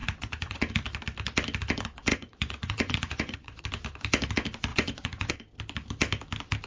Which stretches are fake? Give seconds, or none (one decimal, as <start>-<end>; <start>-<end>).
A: 0.0-0.7; 2.1-3.6; 4.7-5.3